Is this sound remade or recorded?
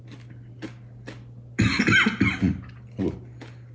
recorded